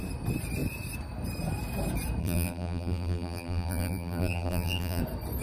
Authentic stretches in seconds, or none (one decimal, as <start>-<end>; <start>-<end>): 0.0-2.2; 5.0-5.4